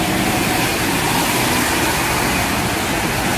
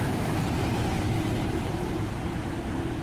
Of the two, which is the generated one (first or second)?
second